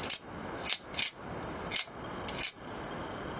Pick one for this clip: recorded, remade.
recorded